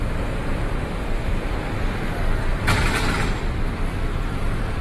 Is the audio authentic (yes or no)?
no